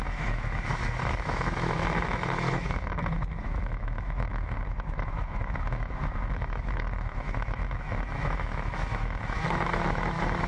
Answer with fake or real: fake